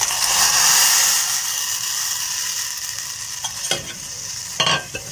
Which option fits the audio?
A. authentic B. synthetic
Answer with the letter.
A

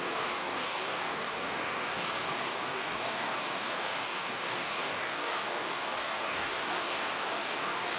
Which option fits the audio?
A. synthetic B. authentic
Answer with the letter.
A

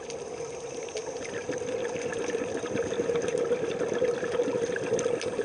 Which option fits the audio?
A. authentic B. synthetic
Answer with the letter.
A